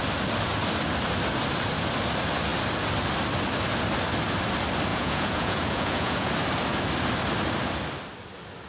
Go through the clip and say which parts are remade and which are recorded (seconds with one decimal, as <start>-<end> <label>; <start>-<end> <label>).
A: 0.0-4.9 recorded; 4.9-6.3 remade; 6.3-8.7 recorded